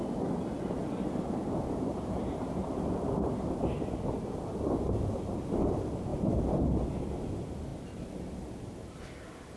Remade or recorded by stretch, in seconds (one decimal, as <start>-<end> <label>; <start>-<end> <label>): 0.0-1.9 recorded; 1.9-3.3 remade; 3.3-6.1 recorded; 6.1-7.0 remade; 7.0-9.6 recorded

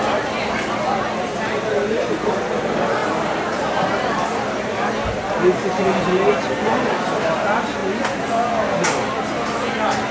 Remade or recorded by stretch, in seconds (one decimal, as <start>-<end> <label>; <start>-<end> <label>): 0.0-3.0 recorded; 3.0-3.6 remade; 3.6-10.1 recorded

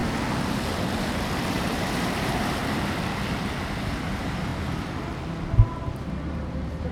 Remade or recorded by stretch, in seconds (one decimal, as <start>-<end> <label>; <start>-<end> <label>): 0.0-1.5 recorded; 1.5-2.6 remade; 2.6-3.8 recorded; 3.8-4.5 remade; 4.5-6.3 recorded; 6.3-6.9 remade

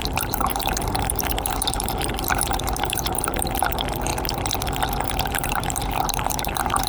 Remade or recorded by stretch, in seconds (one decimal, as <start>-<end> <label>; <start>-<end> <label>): 0.0-4.1 remade; 4.1-5.2 recorded; 5.2-6.9 remade

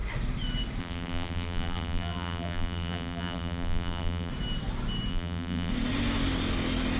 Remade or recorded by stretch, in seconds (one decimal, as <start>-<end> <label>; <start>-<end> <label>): 0.0-0.8 recorded; 0.8-4.3 remade; 4.3-5.1 recorded; 5.1-5.7 remade; 5.7-7.0 recorded

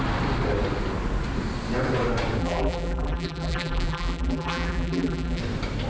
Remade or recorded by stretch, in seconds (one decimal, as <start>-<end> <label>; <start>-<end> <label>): 0.0-2.4 recorded; 2.4-5.4 remade; 5.4-5.9 recorded

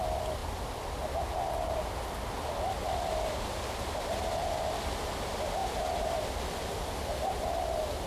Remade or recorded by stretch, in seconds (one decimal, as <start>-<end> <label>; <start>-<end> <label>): 0.0-8.1 recorded